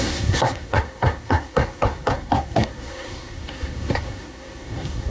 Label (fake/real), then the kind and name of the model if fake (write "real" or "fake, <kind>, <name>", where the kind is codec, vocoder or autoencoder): fake, codec, SNAC